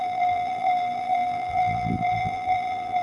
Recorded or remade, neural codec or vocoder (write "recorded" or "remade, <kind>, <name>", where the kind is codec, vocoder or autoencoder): remade, vocoder, BigVGAN v2